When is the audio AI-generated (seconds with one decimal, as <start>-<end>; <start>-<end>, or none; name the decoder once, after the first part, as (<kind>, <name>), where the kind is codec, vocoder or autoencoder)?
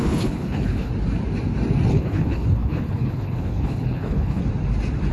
0.0-0.9 (codec, HILCodec); 1.9-4.4